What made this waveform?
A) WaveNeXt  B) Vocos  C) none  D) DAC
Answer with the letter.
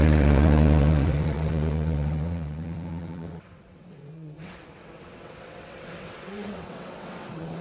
A